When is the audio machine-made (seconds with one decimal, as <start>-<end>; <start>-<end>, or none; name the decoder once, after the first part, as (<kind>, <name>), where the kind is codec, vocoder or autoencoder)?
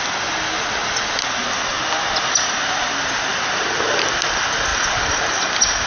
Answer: none